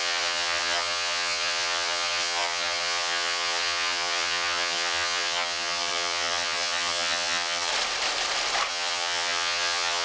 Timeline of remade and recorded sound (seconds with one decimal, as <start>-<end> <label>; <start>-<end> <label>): 0.0-7.7 remade; 7.7-8.7 recorded; 8.7-10.0 remade